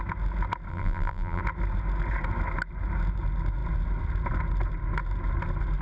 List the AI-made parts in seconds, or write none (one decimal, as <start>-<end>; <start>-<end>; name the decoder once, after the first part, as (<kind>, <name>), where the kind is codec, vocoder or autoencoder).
0.7-1.4 (vocoder, BigVGAN v2)